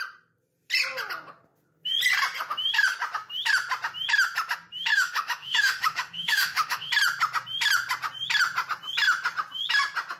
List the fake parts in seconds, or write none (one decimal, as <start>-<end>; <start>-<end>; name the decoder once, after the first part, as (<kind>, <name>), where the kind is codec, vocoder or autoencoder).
4.9-6.9 (autoencoder, DAC-VAE)